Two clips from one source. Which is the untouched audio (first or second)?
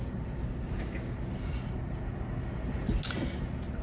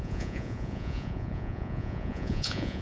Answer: first